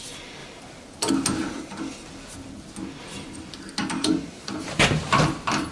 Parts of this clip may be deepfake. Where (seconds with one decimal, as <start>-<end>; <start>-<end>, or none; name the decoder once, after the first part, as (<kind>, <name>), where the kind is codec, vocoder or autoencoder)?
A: 0.4-1.1 (vocoder, BigVGAN v2); 3.8-5.0